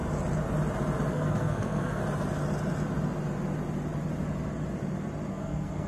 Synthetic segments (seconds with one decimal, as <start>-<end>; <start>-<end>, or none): 1.1-2.0; 5.3-5.9